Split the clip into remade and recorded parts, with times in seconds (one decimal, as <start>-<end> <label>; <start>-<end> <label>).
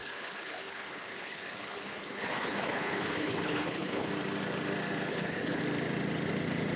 0.0-4.1 remade; 4.1-5.1 recorded; 5.1-5.6 remade; 5.6-6.8 recorded